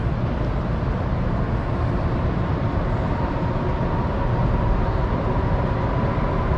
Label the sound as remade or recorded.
recorded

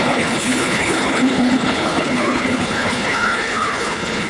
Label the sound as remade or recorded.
remade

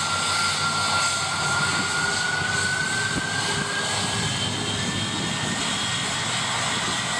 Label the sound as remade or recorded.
recorded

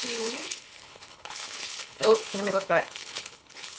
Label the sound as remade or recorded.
remade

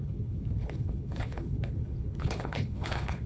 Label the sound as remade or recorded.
remade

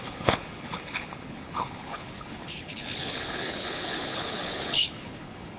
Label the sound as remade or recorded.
remade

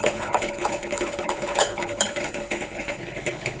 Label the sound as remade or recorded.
remade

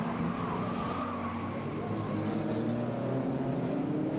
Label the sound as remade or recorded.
recorded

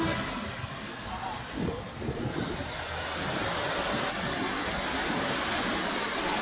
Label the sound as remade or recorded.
recorded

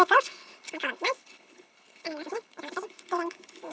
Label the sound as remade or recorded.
remade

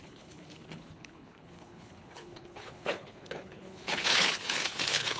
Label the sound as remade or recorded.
remade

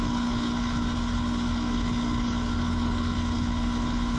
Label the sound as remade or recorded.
remade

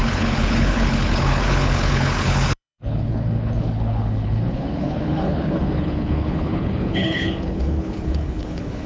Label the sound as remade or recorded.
remade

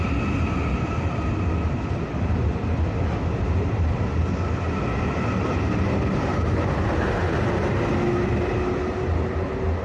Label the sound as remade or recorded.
recorded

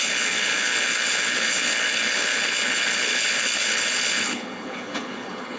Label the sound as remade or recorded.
remade